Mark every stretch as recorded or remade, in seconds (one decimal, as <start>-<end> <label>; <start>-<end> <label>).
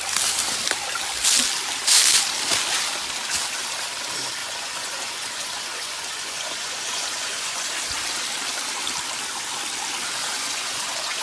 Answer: 0.0-4.4 recorded; 4.4-7.7 remade; 7.7-10.2 recorded; 10.2-11.2 remade